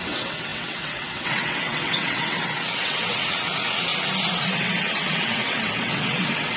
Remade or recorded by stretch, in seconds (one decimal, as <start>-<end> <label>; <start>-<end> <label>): 0.0-3.9 remade; 3.9-4.4 recorded; 4.4-6.6 remade